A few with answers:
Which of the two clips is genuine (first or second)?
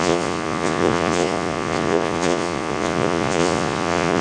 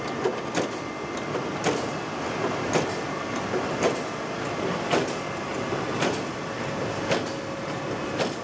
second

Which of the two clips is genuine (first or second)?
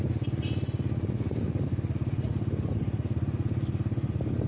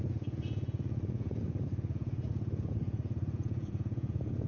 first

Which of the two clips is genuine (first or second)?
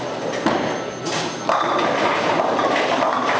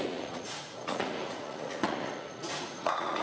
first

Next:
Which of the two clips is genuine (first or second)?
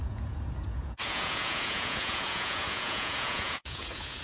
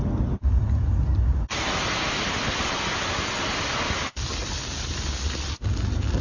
second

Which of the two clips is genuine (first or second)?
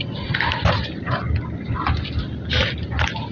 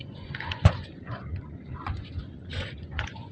first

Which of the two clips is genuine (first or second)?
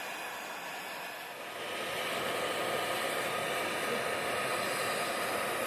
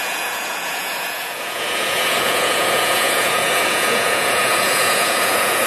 first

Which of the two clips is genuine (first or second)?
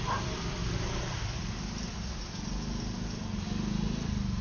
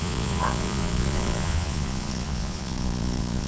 first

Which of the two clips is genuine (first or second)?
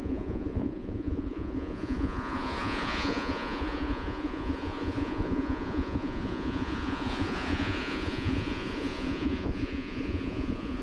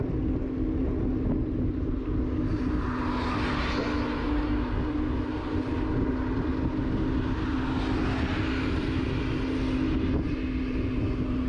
second